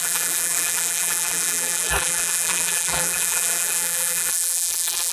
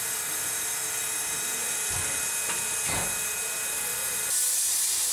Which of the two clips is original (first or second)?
second